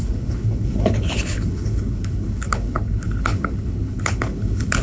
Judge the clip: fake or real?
fake